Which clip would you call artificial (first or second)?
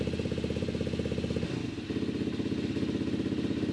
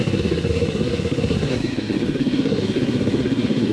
second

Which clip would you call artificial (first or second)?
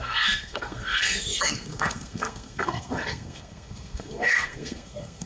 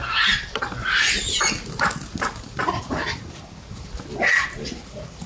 first